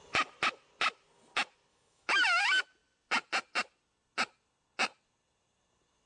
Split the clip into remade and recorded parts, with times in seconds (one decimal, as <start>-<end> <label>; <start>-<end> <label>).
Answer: 0.0-1.7 recorded; 1.7-2.4 remade; 2.4-6.1 recorded